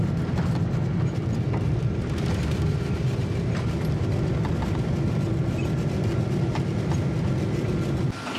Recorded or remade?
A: remade